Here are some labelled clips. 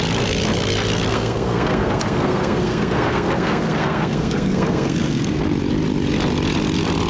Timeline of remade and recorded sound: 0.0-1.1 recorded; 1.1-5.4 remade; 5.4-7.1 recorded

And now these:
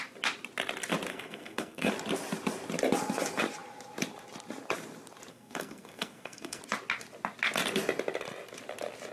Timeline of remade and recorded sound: 0.0-1.1 recorded; 1.1-1.9 remade; 1.9-5.3 recorded; 5.3-6.6 remade; 6.6-9.1 recorded

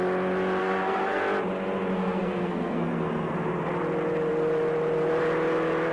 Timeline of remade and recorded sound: 0.0-0.6 recorded; 0.6-1.2 remade; 1.2-1.9 recorded; 1.9-3.3 remade; 3.3-5.9 recorded

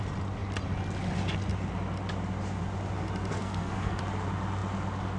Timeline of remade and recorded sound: 0.0-3.3 recorded; 3.3-4.0 remade; 4.0-5.2 recorded